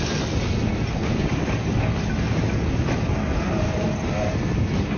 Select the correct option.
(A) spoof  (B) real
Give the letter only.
B